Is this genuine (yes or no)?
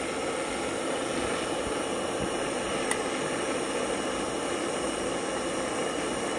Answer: yes